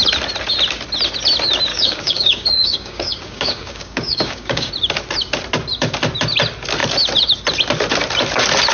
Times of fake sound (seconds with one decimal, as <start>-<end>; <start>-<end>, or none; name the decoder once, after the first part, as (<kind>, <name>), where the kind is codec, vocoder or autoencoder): 1.7-4.7 (codec, DAC)

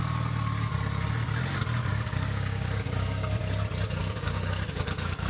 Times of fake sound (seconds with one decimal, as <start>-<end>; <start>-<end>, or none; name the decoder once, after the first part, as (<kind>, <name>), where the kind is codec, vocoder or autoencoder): 1.9-3.4 (codec, DAC); 4.0-5.3